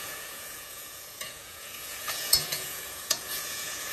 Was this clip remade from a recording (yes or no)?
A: yes